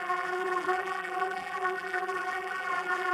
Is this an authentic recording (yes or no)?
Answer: no